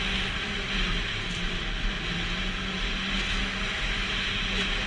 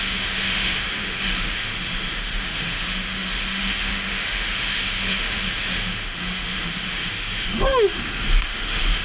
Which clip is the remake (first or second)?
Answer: second